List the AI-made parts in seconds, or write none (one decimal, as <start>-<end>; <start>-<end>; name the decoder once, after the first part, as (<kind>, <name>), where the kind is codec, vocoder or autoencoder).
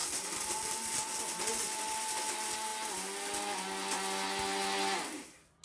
none